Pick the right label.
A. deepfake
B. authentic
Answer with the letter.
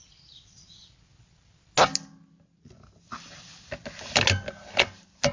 B